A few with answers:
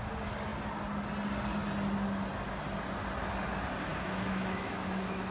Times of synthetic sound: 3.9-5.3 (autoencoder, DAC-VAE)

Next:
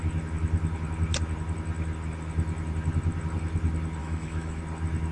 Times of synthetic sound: 4.0-4.6 (autoencoder, DAC-VAE)

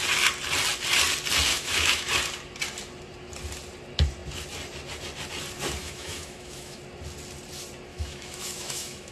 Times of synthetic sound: 1.5-2.1 (autoencoder, DAC-VAE); 5.8-6.8; 7.9-9.1

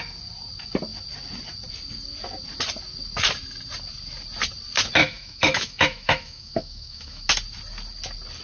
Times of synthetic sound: 5.0-7.3 (autoencoder, DAC-VAE)

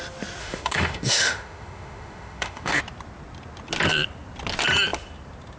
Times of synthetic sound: 0.4-2.8 (autoencoder, DAC-VAE)

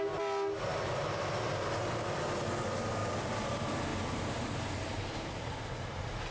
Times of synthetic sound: none

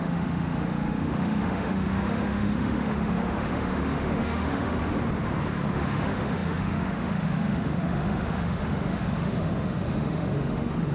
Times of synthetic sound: 0.0-4.8 (autoencoder, DAC-VAE); 5.7-10.9